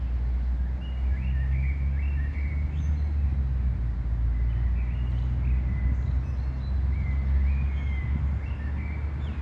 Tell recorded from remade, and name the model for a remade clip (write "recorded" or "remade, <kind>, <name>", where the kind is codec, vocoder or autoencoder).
recorded